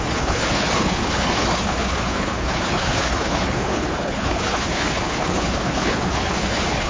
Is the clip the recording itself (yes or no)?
no